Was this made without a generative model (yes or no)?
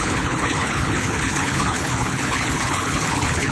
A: no